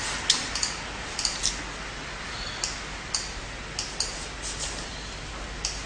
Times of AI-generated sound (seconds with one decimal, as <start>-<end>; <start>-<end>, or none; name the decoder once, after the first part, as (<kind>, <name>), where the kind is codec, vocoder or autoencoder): none